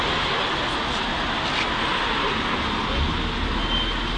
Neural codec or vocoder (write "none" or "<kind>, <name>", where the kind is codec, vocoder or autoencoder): none